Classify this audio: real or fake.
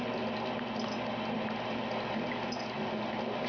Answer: real